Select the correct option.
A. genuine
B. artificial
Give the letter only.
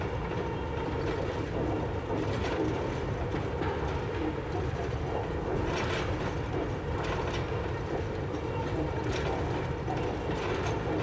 A